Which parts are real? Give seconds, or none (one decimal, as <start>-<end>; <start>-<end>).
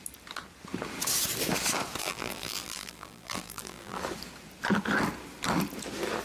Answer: 0.0-2.0; 4.0-6.2